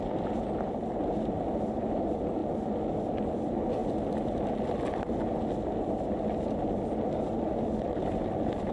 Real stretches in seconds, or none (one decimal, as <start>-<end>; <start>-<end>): 0.0-8.7